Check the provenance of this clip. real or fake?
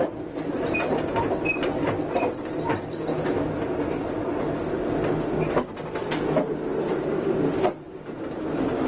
real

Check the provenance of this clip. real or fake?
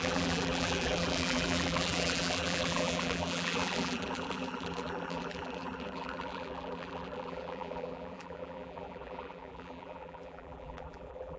fake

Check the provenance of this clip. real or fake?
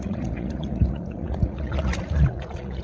fake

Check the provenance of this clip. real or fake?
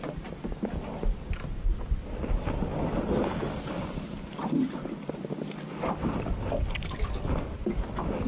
real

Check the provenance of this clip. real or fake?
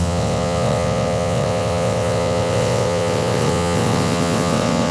fake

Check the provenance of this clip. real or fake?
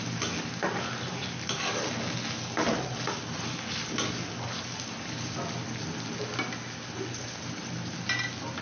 real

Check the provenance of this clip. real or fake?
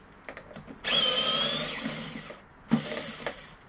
real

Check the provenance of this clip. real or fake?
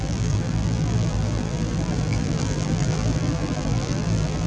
fake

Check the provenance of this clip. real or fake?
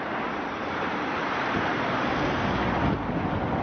real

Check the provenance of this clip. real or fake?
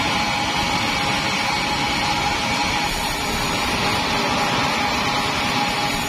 real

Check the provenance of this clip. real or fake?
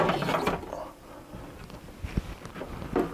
real